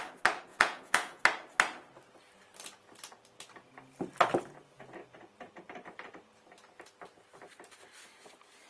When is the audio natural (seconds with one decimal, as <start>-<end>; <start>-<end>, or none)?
0.0-0.5; 1.2-8.7